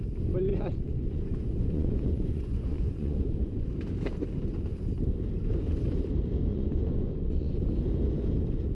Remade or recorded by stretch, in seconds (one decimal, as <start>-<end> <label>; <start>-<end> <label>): 0.0-0.5 recorded; 0.5-3.7 remade; 3.7-6.5 recorded; 6.5-7.6 remade; 7.6-8.7 recorded

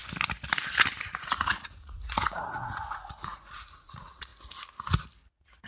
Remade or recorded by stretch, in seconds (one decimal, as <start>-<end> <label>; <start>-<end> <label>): 0.0-1.4 recorded; 1.4-4.3 remade; 4.3-5.3 recorded; 5.3-5.7 remade

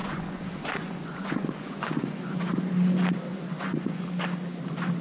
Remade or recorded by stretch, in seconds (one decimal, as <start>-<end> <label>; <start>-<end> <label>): 0.0-2.7 remade; 2.7-3.3 recorded; 3.3-4.0 remade; 4.0-5.0 recorded

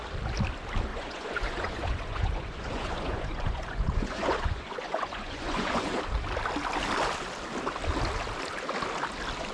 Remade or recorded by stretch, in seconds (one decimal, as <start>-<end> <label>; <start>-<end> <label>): 0.0-0.9 recorded; 0.9-6.0 remade; 6.0-9.5 recorded

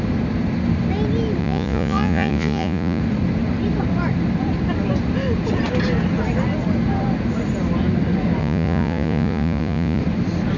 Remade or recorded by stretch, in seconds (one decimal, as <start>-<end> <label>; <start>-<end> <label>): 0.0-1.4 recorded; 1.4-3.0 remade; 3.0-8.4 recorded; 8.4-10.0 remade; 10.0-10.6 recorded

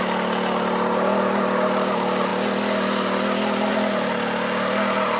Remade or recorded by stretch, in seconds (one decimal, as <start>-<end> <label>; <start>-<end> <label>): 0.0-5.2 recorded

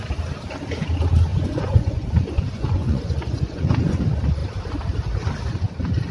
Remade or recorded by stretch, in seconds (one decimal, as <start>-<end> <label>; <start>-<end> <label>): 0.0-1.3 recorded; 1.3-4.0 remade; 4.0-6.1 recorded

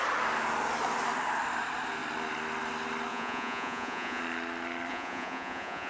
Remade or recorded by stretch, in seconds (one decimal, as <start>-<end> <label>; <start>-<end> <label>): 0.0-3.1 recorded; 3.1-4.2 remade; 4.2-4.9 recorded; 4.9-5.9 remade